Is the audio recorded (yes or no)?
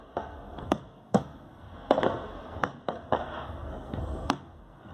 no